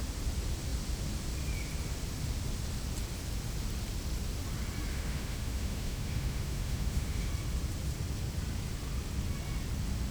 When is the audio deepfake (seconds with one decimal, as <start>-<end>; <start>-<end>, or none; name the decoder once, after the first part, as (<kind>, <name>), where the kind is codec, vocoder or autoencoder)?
4.9-7.3 (autoencoder, DAC-VAE)